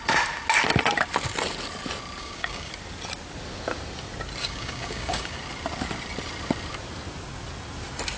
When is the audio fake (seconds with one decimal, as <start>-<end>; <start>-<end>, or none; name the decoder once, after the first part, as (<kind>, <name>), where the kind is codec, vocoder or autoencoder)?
2.2-2.7 (codec, DAC); 4.4-5.4